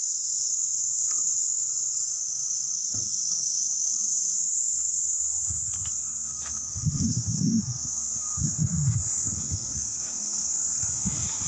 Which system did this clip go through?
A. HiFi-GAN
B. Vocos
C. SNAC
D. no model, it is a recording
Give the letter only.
C